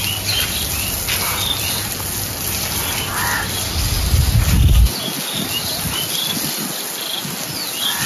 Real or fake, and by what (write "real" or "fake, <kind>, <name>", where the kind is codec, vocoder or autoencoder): real